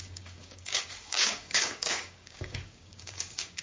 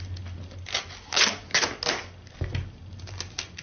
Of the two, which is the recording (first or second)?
second